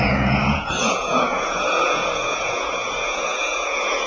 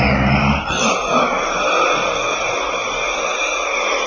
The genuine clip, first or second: second